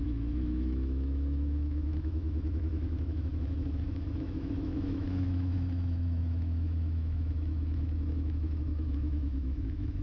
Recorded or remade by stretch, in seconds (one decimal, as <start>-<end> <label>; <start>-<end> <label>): 0.0-10.0 remade